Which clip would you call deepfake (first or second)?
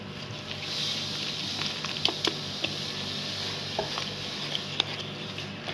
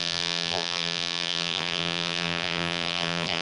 second